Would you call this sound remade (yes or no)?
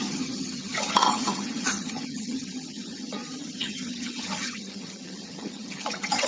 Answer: yes